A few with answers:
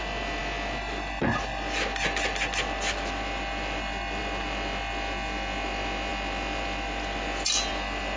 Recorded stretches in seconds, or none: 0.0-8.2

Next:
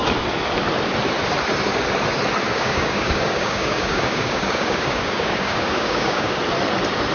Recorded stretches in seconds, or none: 0.0-2.5; 6.3-7.1

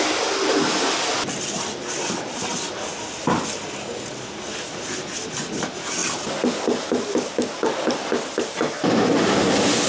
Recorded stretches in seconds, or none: 0.0-9.9